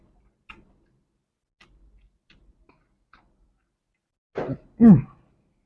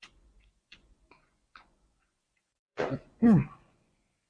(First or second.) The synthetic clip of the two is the second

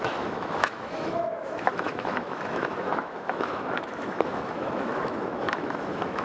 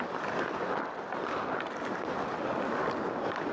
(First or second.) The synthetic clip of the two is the first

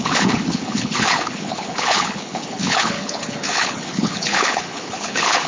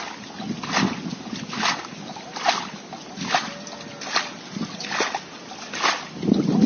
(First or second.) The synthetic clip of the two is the first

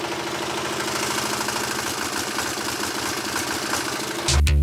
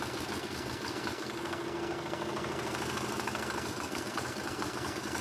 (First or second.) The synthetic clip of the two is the second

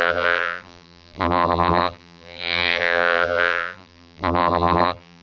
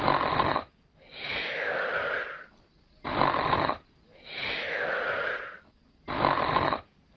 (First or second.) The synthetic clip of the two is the first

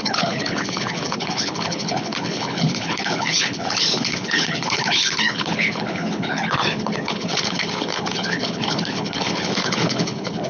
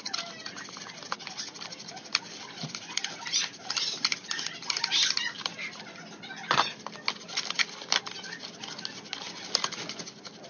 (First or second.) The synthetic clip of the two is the first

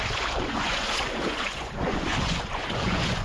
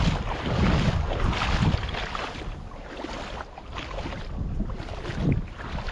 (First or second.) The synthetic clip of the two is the first